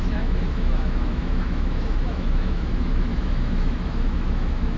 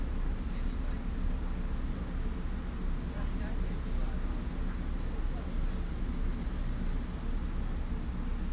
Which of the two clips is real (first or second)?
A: second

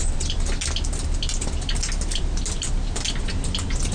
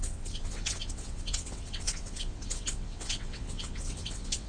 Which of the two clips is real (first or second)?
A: first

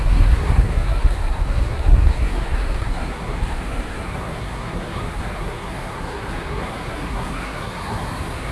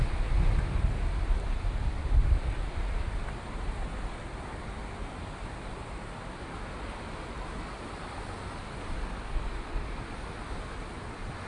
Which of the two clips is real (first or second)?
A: second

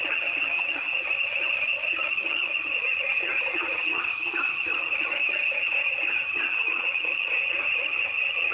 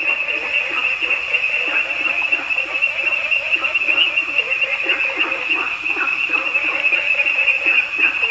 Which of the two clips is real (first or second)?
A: second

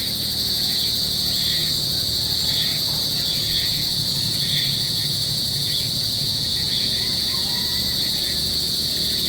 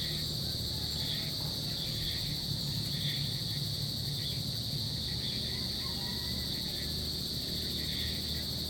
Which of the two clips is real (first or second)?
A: second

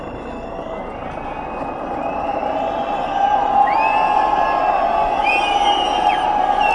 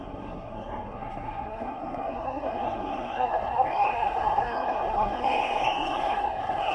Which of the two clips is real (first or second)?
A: first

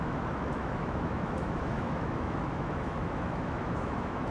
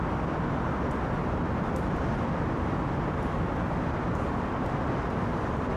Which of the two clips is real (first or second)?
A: second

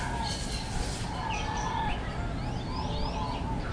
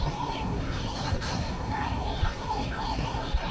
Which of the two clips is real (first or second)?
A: first